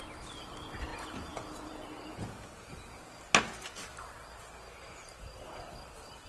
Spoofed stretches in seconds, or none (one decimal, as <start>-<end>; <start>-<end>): 0.9-1.7; 2.1-3.0